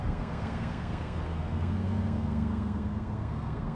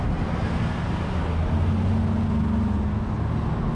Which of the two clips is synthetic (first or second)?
first